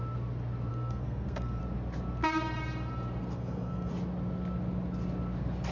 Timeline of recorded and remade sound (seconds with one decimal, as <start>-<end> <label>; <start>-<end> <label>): 0.0-0.7 recorded; 0.7-1.6 remade; 1.6-3.2 recorded; 3.2-3.9 remade; 3.9-5.7 recorded